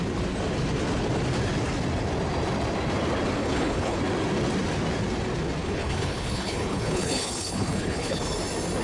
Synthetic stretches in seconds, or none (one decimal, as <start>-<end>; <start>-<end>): 3.4-4.0; 5.6-8.2